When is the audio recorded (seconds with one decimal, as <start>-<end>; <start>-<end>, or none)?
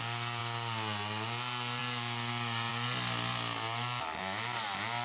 0.0-5.0